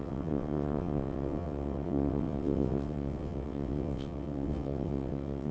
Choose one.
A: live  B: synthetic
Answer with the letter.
B